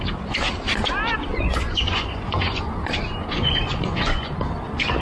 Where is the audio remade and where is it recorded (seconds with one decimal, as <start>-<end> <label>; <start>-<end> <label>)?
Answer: 0.0-1.3 recorded; 1.3-4.3 remade; 4.3-5.0 recorded